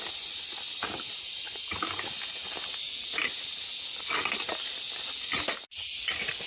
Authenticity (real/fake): real